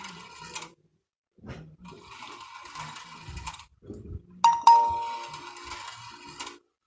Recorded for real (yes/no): yes